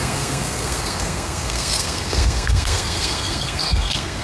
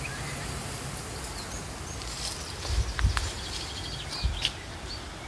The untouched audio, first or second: second